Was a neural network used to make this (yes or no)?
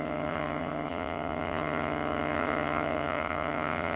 yes